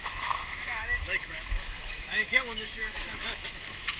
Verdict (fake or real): fake